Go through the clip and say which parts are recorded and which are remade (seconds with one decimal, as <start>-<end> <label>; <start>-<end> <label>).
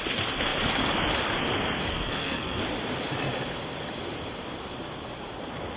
0.0-1.9 recorded; 1.9-2.6 remade; 2.6-5.8 recorded